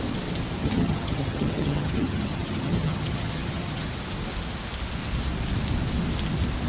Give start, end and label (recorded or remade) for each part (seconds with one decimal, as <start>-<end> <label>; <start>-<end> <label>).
0.0-0.6 recorded; 0.6-3.9 remade; 3.9-6.7 recorded